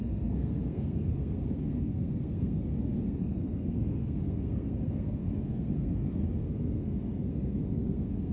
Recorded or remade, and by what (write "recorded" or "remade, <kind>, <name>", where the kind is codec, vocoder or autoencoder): remade, codec, SNAC